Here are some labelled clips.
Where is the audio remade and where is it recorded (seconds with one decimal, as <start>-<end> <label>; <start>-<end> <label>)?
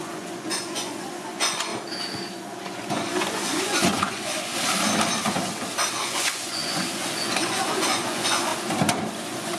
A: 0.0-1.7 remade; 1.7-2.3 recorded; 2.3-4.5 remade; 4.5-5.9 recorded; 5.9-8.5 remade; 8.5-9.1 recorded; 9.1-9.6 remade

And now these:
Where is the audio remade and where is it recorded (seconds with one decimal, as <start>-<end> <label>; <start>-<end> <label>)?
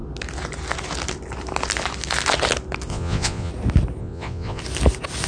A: 0.0-2.9 recorded; 2.9-3.5 remade; 3.5-4.0 recorded; 4.0-4.6 remade; 4.6-5.3 recorded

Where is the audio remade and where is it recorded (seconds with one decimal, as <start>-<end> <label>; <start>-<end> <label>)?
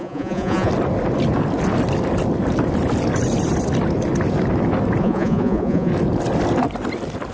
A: 0.0-0.7 remade; 0.7-5.0 recorded; 5.0-5.9 remade; 5.9-7.3 recorded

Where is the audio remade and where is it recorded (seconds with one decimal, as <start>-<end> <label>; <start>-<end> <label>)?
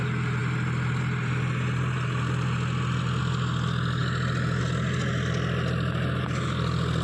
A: 0.0-7.0 recorded